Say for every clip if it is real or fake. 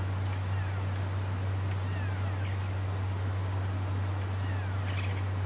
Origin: real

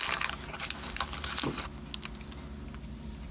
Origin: real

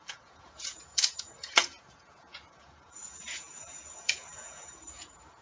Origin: fake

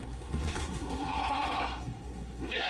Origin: fake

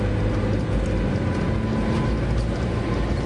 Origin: real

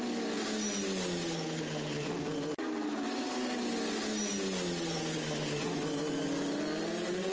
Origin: real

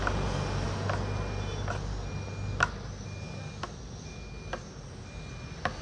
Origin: real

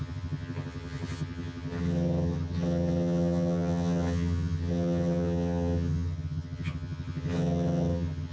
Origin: fake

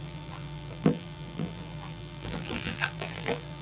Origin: fake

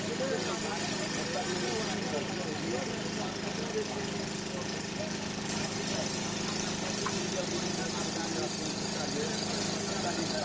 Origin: real